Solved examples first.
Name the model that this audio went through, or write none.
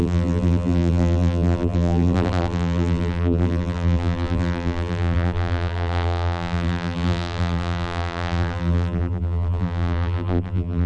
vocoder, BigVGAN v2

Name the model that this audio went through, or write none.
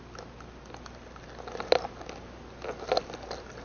none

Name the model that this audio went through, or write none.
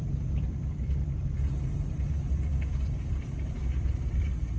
vocoder, BigVGAN v2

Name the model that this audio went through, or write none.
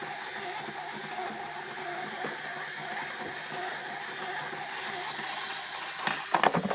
none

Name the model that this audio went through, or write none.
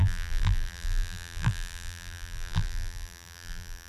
vocoder, BigVGAN v2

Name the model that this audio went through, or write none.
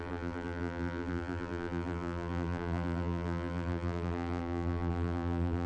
vocoder, BigVGAN v2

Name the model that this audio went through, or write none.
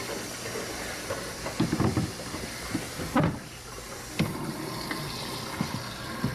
none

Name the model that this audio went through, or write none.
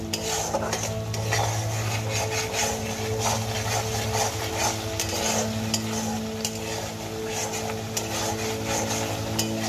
none